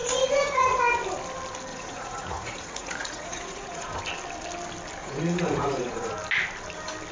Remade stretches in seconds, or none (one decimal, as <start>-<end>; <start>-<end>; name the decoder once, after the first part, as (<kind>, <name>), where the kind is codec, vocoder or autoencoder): 0.0-0.8 (vocoder, Vocos); 1.7-4.0; 5.0-6.1

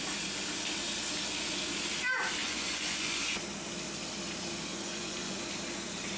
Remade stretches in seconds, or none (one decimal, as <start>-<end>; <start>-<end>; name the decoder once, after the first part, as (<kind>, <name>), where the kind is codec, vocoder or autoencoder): 2.4-3.4 (vocoder, Vocos); 4.7-5.4

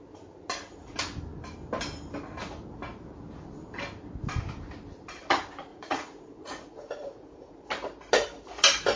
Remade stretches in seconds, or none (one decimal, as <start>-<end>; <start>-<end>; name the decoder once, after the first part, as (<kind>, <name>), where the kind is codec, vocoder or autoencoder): 5.7-7.6 (vocoder, Vocos)

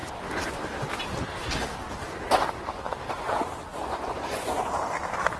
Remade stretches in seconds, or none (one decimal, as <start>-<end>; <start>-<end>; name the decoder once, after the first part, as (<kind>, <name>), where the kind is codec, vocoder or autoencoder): 3.7-4.7 (vocoder, Vocos)